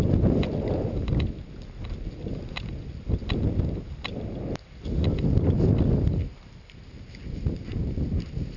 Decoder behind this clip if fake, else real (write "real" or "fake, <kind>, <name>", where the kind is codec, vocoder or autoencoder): real